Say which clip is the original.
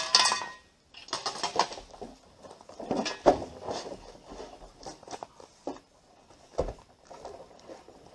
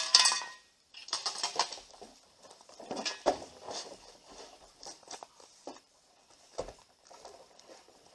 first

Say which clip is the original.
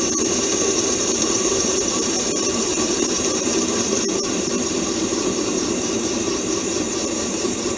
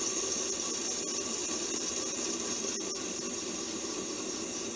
second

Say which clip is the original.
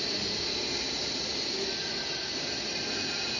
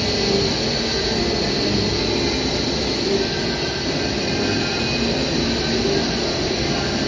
second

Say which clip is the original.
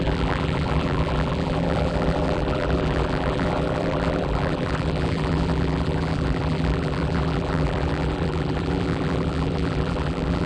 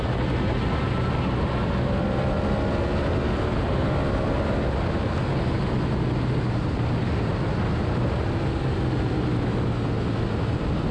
second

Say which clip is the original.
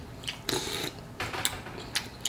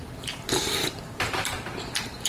first